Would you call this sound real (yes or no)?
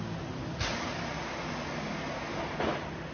yes